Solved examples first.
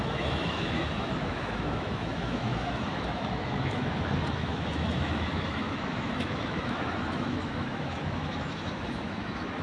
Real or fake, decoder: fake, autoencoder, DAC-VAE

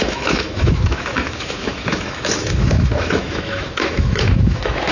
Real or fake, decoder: fake, autoencoder, DAC-VAE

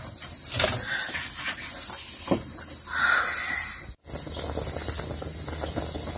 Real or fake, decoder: real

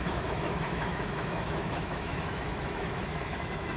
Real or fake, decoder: fake, autoencoder, DAC-VAE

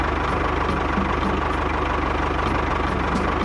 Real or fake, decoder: real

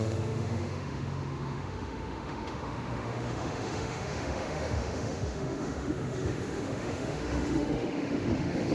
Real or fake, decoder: fake, autoencoder, DAC-VAE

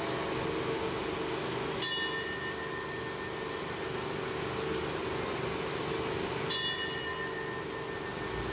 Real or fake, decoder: real